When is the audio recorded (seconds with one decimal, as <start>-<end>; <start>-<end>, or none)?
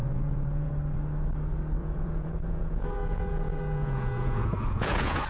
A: 0.7-1.8